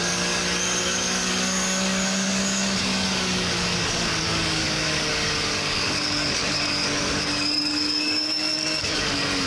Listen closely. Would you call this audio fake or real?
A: fake